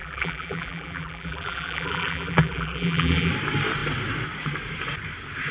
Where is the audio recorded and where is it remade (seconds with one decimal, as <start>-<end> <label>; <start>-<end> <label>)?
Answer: 0.0-3.3 remade; 3.3-5.5 recorded